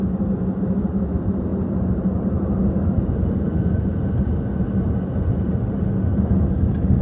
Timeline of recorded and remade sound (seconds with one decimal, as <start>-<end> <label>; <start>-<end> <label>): 0.0-7.0 recorded